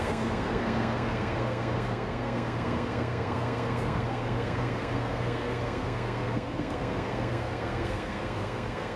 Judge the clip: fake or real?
fake